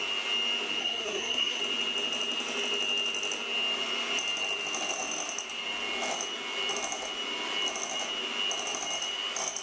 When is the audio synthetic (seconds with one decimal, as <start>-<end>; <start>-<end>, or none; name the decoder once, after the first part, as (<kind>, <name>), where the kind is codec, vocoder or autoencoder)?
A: 0.8-1.6 (codec, SNAC)